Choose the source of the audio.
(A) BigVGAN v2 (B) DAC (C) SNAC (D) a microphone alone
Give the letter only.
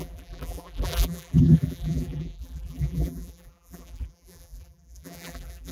A